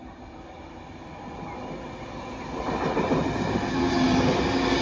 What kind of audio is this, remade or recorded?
recorded